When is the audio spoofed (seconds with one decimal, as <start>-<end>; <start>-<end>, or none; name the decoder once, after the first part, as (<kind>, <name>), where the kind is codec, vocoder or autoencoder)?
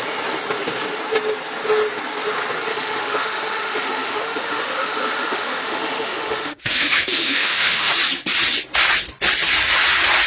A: 2.7-7.9 (autoencoder, DAC-VAE)